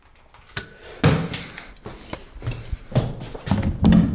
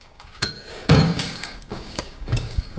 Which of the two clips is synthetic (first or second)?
second